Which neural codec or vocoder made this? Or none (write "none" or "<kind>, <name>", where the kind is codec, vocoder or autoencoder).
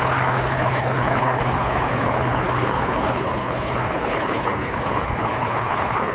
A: codec, HILCodec